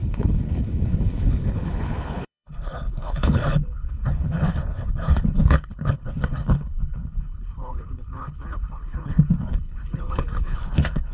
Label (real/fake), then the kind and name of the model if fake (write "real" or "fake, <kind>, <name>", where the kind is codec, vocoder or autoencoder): fake, codec, HILCodec